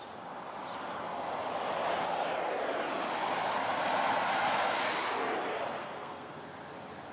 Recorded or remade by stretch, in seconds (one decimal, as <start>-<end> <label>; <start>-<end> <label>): 0.0-5.8 recorded; 5.8-6.3 remade; 6.3-7.1 recorded